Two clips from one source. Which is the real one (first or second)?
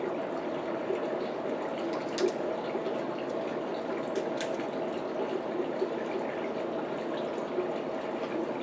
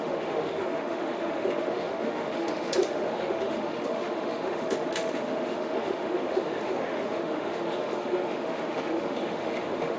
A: first